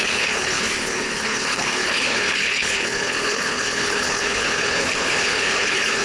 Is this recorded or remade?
remade